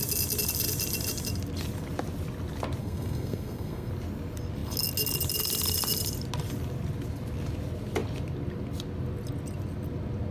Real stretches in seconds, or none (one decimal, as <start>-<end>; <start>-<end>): 0.0-2.8; 3.9-10.3